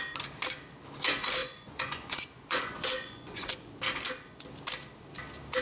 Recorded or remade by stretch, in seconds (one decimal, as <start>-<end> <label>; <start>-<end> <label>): 0.0-1.4 recorded; 1.4-3.7 remade; 3.7-5.6 recorded